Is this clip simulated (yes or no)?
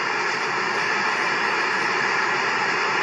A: yes